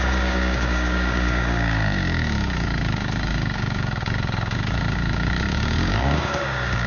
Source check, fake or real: fake